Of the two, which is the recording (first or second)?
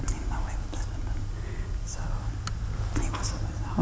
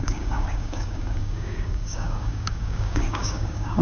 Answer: first